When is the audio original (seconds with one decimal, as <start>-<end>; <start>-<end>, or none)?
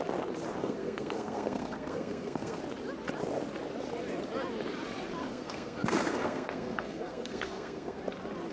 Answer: 0.0-0.6; 2.6-5.2; 8.0-8.5